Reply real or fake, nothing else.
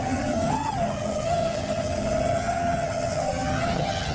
fake